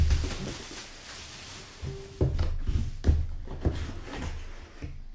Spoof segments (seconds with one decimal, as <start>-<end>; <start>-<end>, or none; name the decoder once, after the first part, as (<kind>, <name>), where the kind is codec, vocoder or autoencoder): none